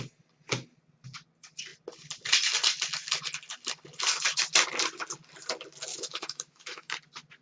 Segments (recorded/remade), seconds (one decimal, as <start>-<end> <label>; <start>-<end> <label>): 0.0-5.9 recorded; 5.9-6.9 remade; 6.9-7.4 recorded